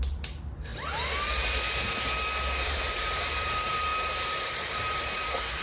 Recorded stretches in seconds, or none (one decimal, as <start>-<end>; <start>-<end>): 0.7-2.6